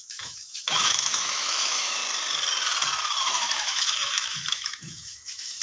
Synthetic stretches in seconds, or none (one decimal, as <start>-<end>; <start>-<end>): 0.0-2.0; 3.2-5.6